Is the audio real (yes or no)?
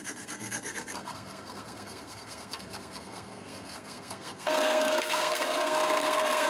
no